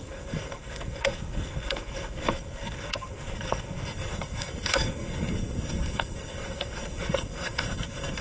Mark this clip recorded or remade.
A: remade